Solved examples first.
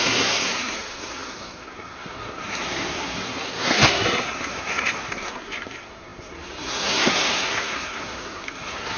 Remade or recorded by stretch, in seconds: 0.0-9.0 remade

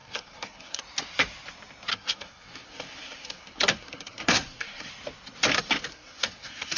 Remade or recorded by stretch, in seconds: 0.0-0.8 remade; 0.8-1.9 recorded; 1.9-4.9 remade; 4.9-5.9 recorded; 5.9-6.8 remade

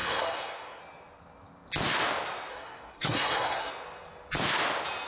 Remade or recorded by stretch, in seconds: 0.0-0.8 remade; 0.8-2.5 recorded; 2.5-3.7 remade; 3.7-5.1 recorded

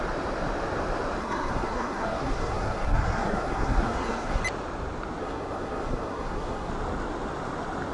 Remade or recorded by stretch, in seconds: 0.0-1.2 recorded; 1.2-4.4 remade; 4.4-5.2 recorded; 5.2-6.7 remade; 6.7-7.9 recorded

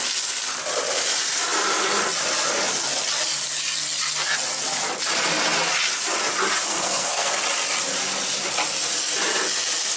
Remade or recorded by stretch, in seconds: 0.0-6.7 recorded; 6.7-7.3 remade; 7.3-10.0 recorded

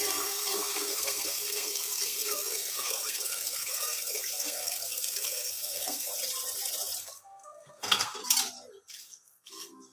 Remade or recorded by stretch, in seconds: 0.0-6.1 remade; 6.1-7.0 recorded; 7.0-8.2 remade; 8.2-8.9 recorded; 8.9-9.9 remade

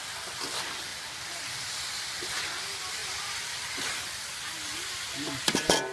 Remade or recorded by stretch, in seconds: 0.0-5.9 recorded

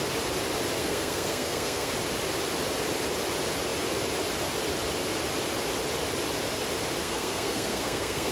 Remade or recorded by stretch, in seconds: 0.0-0.8 recorded; 0.8-1.9 remade; 1.9-7.0 recorded; 7.0-8.3 remade